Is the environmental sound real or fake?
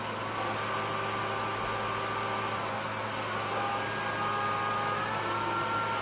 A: real